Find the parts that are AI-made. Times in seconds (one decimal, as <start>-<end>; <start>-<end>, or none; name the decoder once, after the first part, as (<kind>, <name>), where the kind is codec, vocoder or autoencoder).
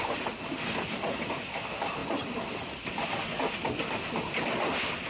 none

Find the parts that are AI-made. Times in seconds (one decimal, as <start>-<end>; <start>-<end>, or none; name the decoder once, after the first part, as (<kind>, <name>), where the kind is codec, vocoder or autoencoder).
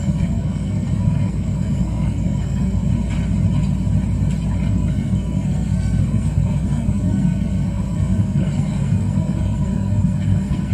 0.0-2.9 (codec, SNAC); 4.7-10.7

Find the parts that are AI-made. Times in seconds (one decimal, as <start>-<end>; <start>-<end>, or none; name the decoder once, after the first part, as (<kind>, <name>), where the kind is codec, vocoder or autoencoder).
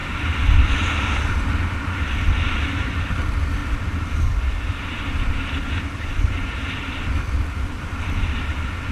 none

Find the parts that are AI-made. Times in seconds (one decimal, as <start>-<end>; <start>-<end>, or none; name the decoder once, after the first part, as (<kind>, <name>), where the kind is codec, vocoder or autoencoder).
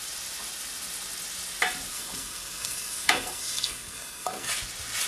1.9-4.5 (codec, SNAC)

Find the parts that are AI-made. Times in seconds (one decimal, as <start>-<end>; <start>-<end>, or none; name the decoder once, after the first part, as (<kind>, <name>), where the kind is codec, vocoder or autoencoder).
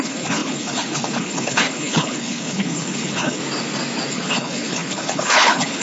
0.0-3.4 (codec, HILCodec); 4.1-5.8